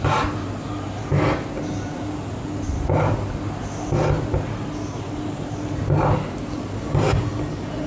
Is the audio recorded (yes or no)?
yes